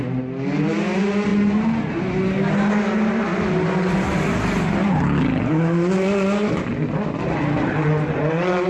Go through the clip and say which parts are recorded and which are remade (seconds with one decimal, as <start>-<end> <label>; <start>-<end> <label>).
0.0-8.7 recorded